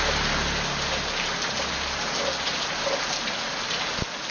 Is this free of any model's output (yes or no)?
yes